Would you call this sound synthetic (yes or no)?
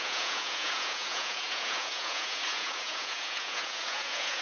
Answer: yes